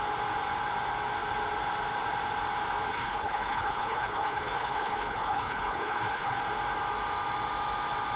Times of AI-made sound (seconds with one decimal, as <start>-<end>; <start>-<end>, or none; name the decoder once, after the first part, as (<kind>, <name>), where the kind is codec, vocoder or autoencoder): 2.9-6.4 (codec, HILCodec)